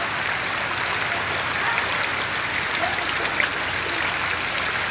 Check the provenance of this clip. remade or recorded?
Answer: recorded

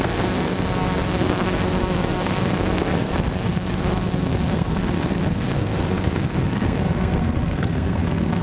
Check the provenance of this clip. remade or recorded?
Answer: remade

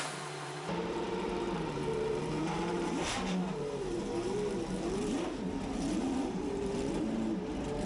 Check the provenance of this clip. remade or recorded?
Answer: remade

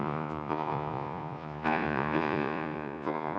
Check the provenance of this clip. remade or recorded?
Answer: remade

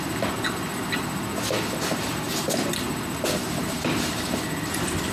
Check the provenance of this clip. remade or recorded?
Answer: recorded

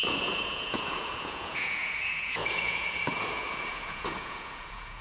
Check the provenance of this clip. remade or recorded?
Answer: remade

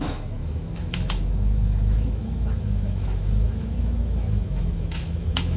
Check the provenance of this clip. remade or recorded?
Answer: remade